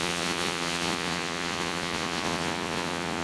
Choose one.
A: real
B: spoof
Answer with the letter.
B